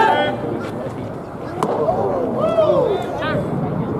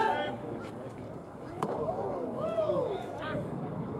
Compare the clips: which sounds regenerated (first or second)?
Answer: second